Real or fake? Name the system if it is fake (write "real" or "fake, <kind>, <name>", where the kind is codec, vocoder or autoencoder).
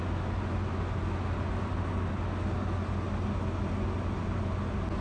real